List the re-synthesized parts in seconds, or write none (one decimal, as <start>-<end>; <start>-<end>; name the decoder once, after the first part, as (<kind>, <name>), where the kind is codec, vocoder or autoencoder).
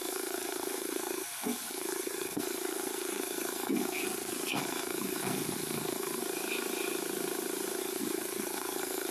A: 0.0-6.2 (codec, SNAC); 7.8-9.1